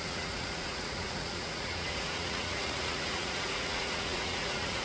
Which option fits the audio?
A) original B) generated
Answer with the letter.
B